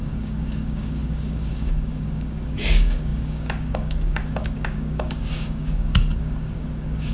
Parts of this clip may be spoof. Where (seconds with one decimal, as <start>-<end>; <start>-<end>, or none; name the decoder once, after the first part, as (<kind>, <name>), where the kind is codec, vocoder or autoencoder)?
0.0-7.1 (codec, DAC)